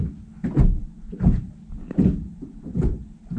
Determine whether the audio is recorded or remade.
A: recorded